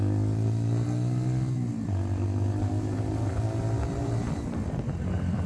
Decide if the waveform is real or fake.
real